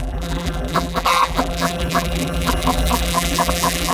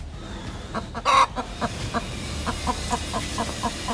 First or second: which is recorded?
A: second